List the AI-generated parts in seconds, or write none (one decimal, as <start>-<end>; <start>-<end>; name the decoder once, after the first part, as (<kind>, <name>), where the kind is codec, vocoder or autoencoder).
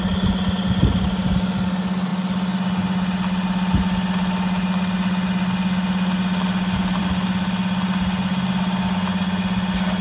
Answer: none